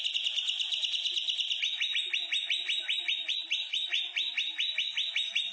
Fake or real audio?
real